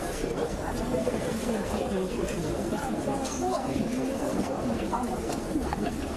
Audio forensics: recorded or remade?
remade